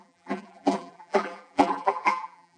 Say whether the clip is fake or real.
fake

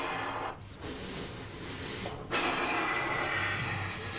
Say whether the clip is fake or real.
real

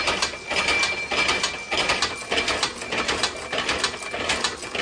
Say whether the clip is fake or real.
real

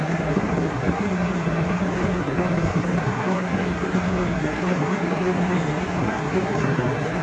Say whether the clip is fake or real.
fake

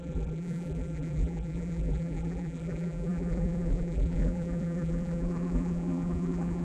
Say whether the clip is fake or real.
fake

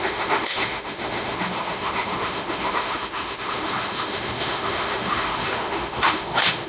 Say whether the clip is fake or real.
fake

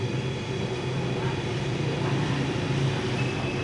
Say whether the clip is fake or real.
real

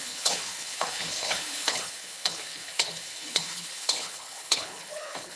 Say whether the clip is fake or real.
fake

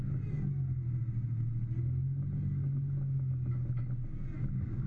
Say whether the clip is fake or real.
real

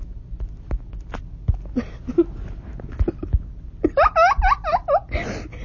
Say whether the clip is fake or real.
real